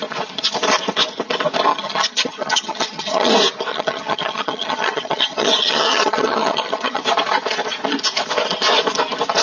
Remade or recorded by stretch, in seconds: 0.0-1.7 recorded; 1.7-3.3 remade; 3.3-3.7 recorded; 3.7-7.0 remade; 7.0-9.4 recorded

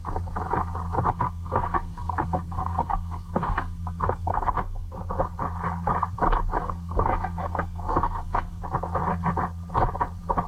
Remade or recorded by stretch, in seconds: 0.0-1.1 recorded; 1.1-4.9 remade; 4.9-6.6 recorded; 6.6-8.6 remade; 8.6-10.5 recorded

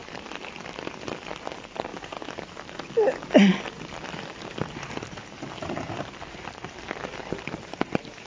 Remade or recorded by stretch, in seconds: 0.0-8.3 recorded

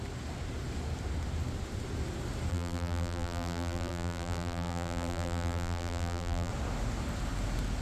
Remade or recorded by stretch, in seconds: 0.0-2.5 recorded; 2.5-6.5 remade; 6.5-7.8 recorded

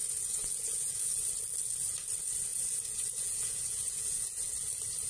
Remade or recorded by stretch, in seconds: 0.0-1.1 remade; 1.1-2.5 recorded; 2.5-4.5 remade; 4.5-5.1 recorded

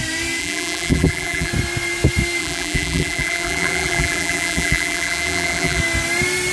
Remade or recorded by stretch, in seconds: 0.0-0.4 recorded; 0.4-1.5 remade; 1.5-2.4 recorded; 2.4-5.8 remade; 5.8-6.5 recorded